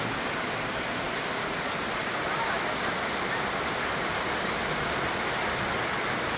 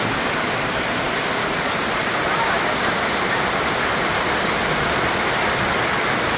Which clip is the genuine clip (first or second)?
first